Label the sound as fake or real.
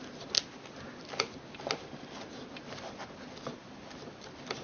real